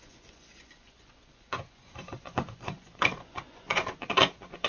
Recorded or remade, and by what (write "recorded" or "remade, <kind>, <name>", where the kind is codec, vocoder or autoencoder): remade, vocoder, Vocos